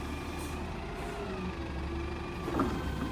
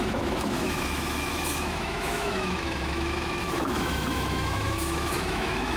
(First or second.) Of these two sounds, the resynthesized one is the second